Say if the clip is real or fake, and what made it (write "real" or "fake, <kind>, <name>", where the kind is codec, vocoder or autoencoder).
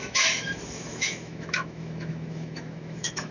fake, autoencoder, DAC-VAE